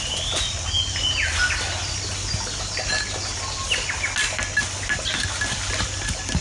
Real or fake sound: real